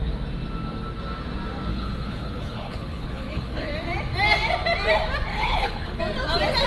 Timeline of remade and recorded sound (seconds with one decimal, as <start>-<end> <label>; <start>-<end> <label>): 0.0-1.7 recorded; 1.7-3.7 remade; 3.7-5.3 recorded; 5.3-6.0 remade; 6.0-6.7 recorded